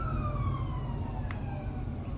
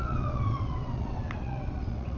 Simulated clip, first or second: second